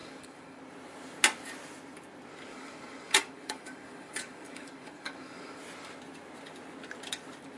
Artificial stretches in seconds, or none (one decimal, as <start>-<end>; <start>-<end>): 0.0-0.6; 2.5-5.6